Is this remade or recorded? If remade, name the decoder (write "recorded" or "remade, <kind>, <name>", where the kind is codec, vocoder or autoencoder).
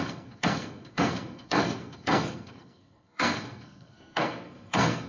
remade, codec, SNAC